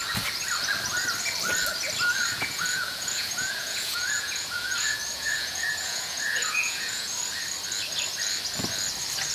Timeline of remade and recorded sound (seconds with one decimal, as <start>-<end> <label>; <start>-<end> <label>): 0.0-2.2 recorded; 2.2-7.1 remade; 7.1-9.3 recorded